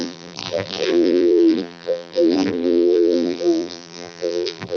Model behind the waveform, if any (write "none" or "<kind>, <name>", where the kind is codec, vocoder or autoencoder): vocoder, BigVGAN v2